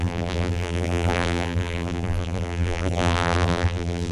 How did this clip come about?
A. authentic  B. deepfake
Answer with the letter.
B